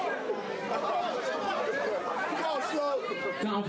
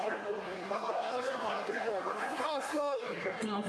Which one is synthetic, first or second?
second